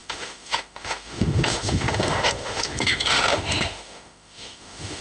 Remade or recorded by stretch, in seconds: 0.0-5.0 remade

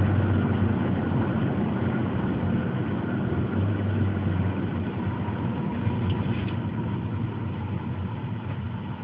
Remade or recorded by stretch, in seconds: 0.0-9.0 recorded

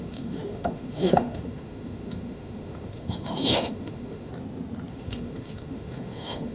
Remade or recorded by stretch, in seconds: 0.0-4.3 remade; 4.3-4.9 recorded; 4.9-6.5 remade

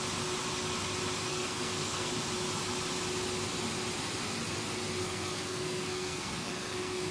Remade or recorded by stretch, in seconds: 0.0-1.3 recorded; 1.3-2.1 remade; 2.1-5.0 recorded; 5.0-7.1 remade

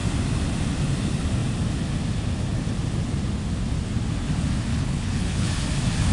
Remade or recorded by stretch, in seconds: 0.0-4.7 recorded; 4.7-5.6 remade; 5.6-6.1 recorded

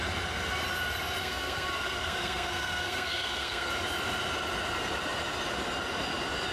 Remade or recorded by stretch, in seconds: 0.0-1.2 recorded; 1.2-3.7 remade; 3.7-6.5 recorded

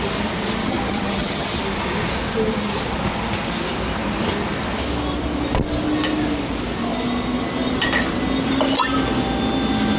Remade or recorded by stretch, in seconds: 0.0-0.6 recorded; 0.6-1.6 remade; 1.6-10.0 recorded